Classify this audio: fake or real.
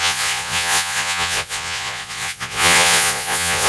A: fake